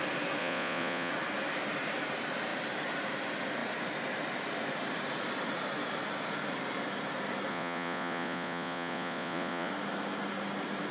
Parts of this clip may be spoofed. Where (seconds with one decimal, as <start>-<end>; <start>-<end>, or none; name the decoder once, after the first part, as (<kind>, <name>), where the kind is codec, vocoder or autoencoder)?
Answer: 0.4-1.1 (vocoder, Vocos); 7.5-9.7